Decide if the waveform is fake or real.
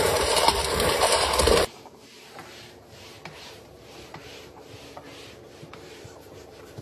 fake